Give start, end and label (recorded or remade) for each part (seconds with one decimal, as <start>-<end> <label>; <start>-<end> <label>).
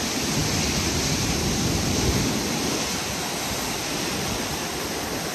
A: 0.0-5.3 recorded